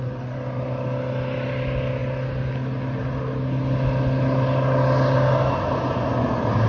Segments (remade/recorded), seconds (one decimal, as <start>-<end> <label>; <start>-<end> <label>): 0.0-6.7 recorded